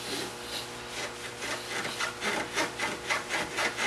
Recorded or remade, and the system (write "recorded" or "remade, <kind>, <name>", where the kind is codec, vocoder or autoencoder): recorded